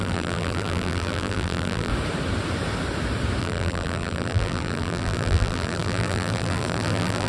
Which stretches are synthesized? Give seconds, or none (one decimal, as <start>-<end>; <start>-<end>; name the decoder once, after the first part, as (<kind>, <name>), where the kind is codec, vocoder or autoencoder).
0.0-1.9 (vocoder, BigVGAN v2); 3.4-7.3